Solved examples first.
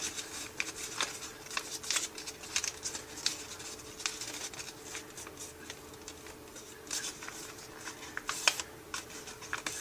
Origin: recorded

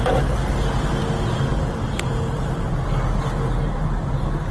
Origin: recorded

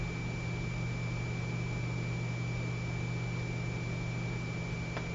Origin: recorded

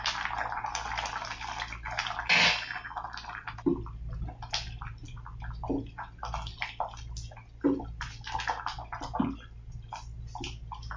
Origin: recorded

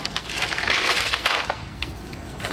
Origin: remade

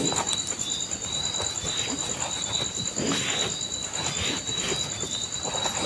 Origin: recorded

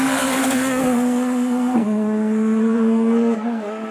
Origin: remade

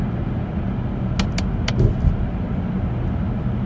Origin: recorded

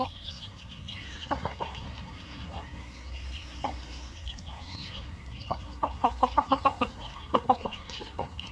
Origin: remade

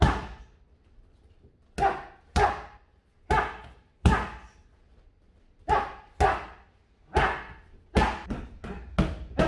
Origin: recorded